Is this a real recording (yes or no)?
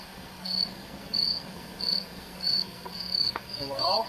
no